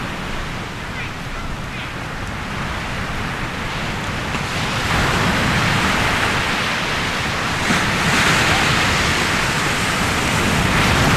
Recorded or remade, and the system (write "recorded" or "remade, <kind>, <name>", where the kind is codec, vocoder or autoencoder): recorded